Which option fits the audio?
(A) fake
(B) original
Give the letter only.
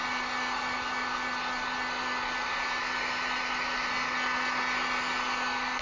B